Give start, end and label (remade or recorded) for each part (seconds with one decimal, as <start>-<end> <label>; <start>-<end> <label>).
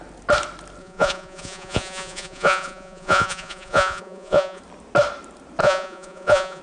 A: 0.0-0.8 recorded; 0.8-4.6 remade; 4.6-5.6 recorded; 5.6-6.6 remade